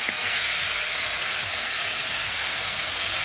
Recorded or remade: remade